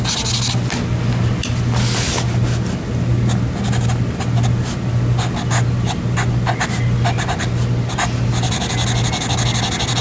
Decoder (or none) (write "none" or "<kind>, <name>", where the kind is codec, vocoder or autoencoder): none